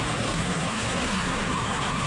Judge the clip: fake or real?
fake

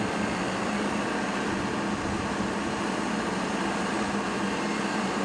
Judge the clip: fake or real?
real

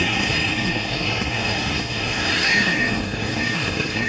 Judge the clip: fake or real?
fake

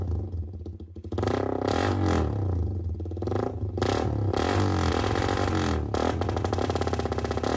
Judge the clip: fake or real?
real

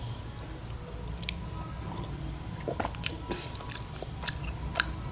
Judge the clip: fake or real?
real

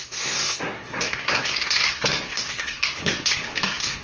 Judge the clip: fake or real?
fake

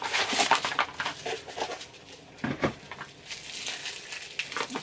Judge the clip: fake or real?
real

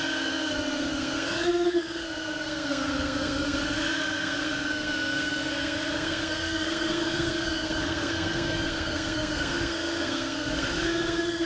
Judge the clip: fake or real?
fake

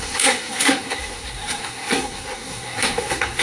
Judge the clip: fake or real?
fake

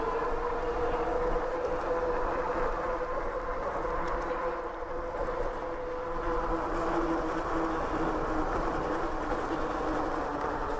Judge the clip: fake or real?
real